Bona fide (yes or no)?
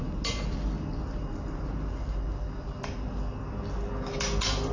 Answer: yes